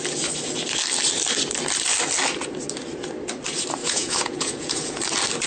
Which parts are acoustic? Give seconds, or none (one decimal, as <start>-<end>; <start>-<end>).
0.0-3.8; 5.0-5.5

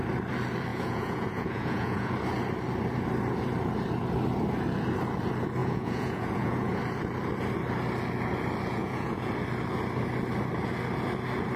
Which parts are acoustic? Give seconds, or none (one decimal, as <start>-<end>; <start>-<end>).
0.0-0.7; 2.1-5.6; 6.8-8.7; 9.3-11.6

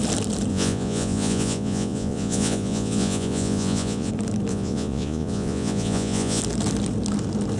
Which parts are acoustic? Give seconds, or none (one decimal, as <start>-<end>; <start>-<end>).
0.0-0.5; 4.1-4.5; 6.4-7.6

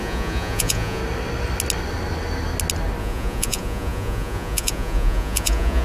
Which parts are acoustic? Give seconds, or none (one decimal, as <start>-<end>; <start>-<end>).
1.0-3.0

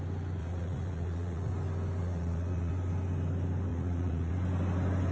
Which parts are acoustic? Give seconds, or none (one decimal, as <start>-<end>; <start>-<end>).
0.0-0.4; 1.5-2.0; 2.7-3.7; 4.3-5.1

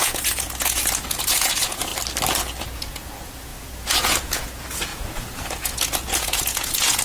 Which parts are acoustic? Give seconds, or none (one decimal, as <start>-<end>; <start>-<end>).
1.9-2.6

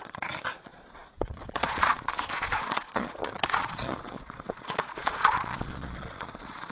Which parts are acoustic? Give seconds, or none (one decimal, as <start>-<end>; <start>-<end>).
none